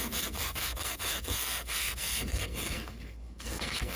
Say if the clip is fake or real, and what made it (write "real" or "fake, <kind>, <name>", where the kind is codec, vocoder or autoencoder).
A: fake, codec, SNAC